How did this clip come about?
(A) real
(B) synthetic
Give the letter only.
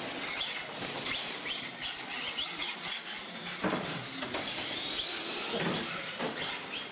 A